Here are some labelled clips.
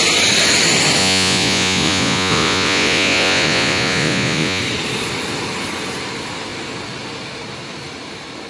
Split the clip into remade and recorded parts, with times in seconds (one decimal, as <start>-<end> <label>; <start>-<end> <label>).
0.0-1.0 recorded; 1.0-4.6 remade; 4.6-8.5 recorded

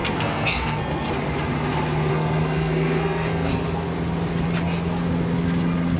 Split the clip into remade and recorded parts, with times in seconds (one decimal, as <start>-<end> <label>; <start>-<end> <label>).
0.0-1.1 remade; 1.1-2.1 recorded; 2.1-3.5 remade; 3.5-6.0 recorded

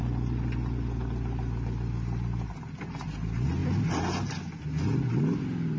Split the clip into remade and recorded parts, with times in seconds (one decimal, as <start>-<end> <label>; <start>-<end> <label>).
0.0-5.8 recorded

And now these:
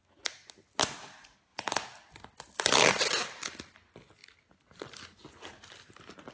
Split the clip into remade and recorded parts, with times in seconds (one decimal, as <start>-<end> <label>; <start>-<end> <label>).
0.0-6.3 recorded